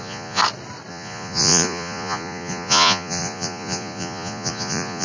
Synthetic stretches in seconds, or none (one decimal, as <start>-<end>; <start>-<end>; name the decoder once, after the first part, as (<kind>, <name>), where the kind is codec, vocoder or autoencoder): 0.0-0.4 (vocoder, Vocos); 0.9-5.0